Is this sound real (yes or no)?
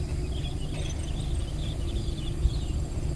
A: yes